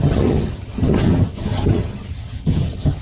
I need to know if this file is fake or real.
fake